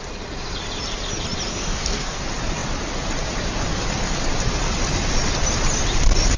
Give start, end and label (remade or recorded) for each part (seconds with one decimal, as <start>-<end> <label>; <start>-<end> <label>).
0.0-1.5 recorded; 1.5-2.2 remade; 2.2-6.4 recorded